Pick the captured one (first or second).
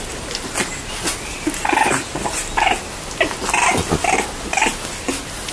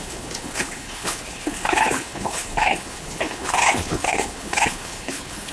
first